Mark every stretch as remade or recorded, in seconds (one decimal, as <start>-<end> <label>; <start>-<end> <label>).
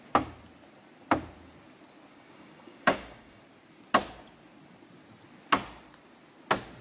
0.0-2.1 recorded; 2.1-3.4 remade; 3.4-6.8 recorded